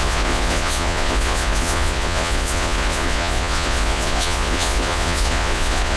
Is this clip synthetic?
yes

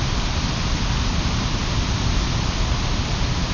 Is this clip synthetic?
no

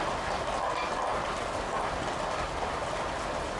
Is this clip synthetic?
no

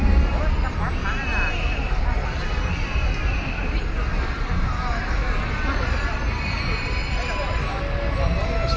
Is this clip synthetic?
no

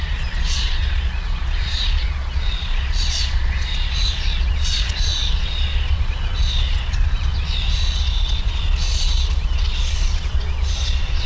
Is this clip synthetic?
yes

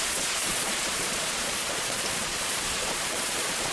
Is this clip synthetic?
yes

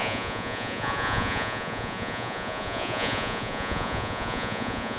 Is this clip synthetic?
yes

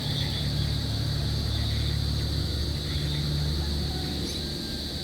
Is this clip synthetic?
no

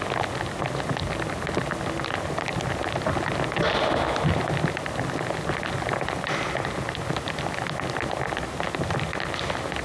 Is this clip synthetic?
no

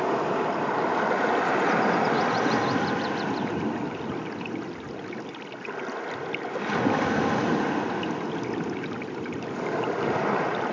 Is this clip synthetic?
no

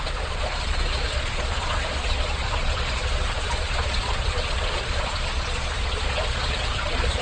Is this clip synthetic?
yes